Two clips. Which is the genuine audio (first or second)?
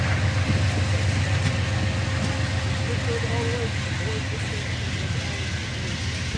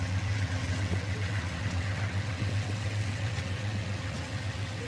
first